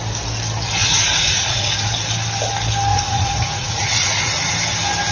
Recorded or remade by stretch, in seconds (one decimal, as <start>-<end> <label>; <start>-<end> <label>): 0.0-0.8 recorded; 0.8-1.9 remade; 1.9-2.9 recorded; 2.9-4.5 remade; 4.5-5.1 recorded